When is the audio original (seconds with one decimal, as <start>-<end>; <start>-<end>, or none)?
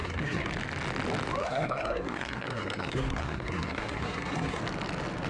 0.5-1.4; 4.6-5.3